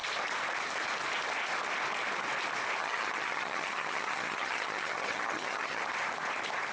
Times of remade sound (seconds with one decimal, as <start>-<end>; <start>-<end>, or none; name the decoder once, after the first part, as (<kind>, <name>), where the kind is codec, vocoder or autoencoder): 2.8-5.8 (vocoder, HiFi-GAN)